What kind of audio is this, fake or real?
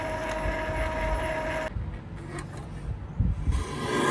real